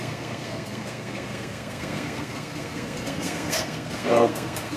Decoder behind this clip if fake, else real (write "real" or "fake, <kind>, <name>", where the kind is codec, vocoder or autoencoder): fake, codec, SNAC